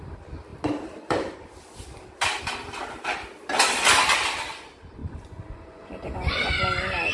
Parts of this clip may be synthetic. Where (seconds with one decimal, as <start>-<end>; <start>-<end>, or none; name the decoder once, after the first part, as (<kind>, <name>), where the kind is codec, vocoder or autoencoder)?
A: 5.0-6.6 (vocoder, Vocos)